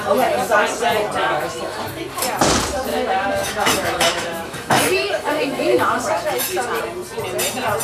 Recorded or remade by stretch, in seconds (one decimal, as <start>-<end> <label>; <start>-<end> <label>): 0.0-1.2 recorded; 1.2-1.8 remade; 1.8-2.9 recorded; 2.9-6.8 remade; 6.8-7.8 recorded